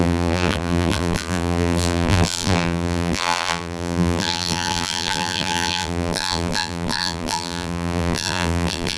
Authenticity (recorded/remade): remade